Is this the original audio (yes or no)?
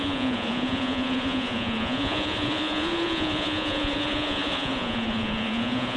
no